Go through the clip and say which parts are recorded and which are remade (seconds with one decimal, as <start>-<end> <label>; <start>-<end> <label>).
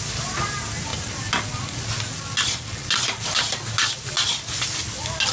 0.0-5.3 recorded